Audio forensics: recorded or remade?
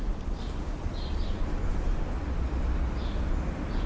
recorded